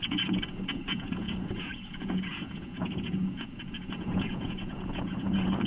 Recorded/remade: remade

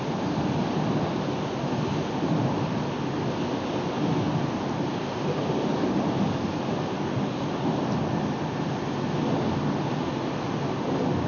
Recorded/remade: recorded